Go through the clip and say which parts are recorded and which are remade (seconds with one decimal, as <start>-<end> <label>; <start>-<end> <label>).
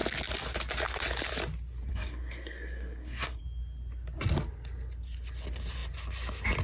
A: 0.0-1.9 recorded; 1.9-3.4 remade; 3.4-6.6 recorded